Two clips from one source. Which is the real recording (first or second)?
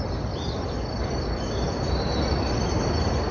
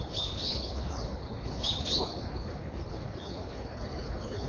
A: first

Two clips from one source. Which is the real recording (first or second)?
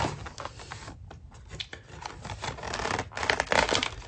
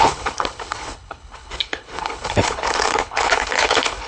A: first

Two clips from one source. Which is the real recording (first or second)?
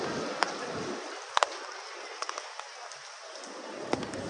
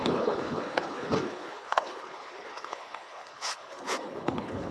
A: first